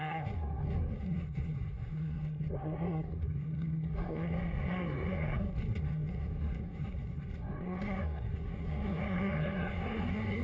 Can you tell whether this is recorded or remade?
remade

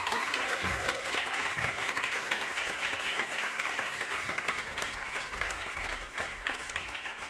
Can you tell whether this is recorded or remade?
remade